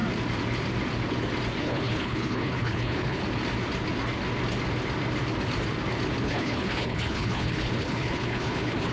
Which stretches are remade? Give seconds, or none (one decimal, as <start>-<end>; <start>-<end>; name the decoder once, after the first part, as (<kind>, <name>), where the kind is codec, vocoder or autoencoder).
1.6-3.2 (codec, HILCodec); 6.2-8.9

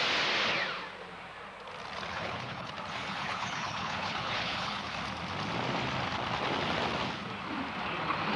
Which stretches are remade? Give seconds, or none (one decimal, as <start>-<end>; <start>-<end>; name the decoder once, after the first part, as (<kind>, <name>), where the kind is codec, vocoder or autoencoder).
2.1-2.7 (codec, HILCodec); 3.1-4.9

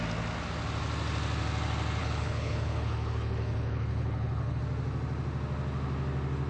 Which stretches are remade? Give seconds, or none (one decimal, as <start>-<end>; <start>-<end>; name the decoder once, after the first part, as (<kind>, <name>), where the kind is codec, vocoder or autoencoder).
2.0-4.6 (codec, HILCodec)

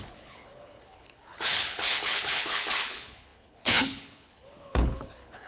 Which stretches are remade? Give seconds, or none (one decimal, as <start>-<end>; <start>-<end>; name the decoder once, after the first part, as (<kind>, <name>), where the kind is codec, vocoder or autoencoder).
0.0-5.5 (codec, HILCodec)

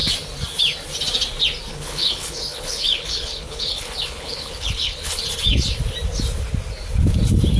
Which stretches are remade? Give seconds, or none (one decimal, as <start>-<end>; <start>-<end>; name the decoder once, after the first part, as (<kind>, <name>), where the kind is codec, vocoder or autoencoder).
1.7-5.2 (codec, HILCodec)

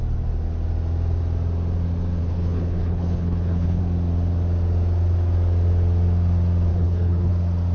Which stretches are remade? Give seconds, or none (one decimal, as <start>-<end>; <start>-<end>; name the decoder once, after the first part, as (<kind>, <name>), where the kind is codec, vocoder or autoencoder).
2.2-3.8 (codec, HILCodec); 6.7-7.3

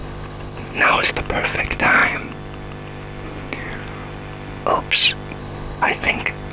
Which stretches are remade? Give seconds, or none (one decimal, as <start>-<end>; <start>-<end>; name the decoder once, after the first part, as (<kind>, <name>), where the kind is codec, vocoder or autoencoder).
0.0-1.1 (codec, HILCodec); 5.4-6.1

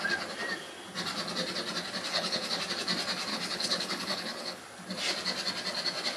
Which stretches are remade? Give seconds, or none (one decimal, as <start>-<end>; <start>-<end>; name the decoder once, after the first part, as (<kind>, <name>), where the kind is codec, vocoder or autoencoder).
2.1-2.6 (codec, HILCodec); 3.3-4.6